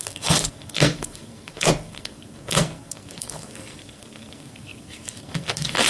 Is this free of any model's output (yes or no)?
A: no